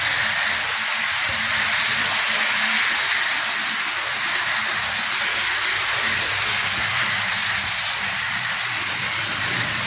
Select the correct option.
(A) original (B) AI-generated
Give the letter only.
A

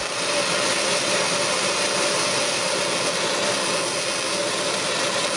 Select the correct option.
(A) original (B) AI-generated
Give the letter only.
A